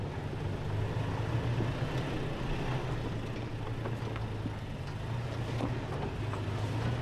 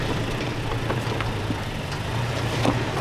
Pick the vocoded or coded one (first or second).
second